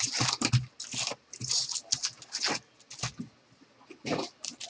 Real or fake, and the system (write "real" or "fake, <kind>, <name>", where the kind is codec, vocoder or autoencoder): real